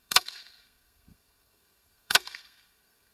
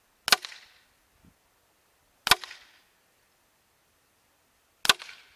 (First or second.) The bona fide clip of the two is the second